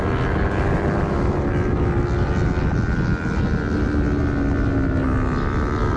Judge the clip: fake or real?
real